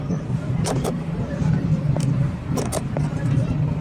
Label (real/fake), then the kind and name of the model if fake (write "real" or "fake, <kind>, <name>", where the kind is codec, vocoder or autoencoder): fake, vocoder, BigVGAN v2